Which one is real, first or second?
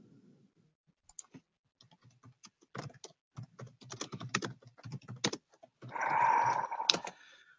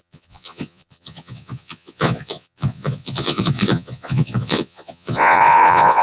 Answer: first